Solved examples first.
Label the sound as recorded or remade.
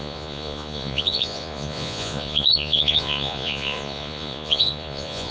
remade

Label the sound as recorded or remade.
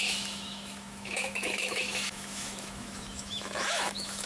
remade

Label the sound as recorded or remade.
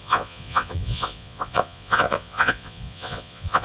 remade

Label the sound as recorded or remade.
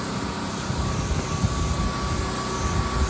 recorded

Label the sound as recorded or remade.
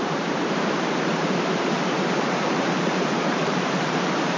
remade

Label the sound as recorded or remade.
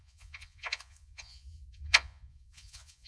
remade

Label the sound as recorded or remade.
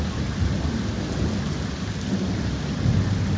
recorded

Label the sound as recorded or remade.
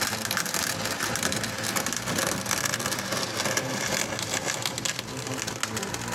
recorded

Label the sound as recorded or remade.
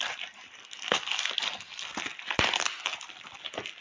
recorded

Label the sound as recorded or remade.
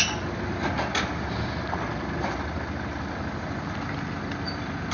recorded